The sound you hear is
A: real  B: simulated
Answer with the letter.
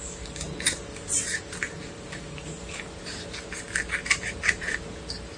A